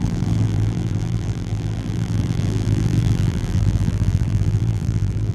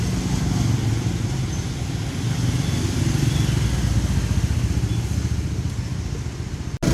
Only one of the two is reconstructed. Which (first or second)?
first